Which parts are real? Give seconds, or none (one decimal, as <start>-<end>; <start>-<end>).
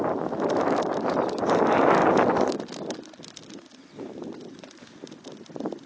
0.0-5.9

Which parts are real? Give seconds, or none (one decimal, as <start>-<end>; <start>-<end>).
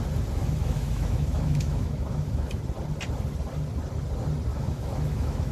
0.0-0.4; 2.6-4.5